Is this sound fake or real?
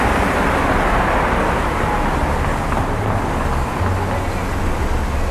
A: real